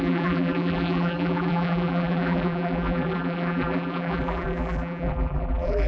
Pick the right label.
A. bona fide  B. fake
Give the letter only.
B